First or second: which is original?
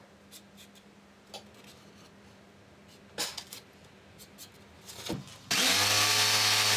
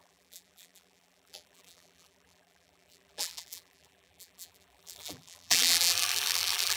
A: first